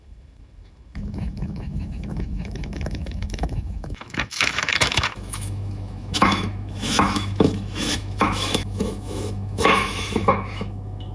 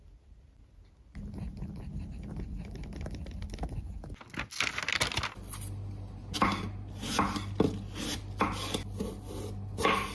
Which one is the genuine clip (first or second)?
second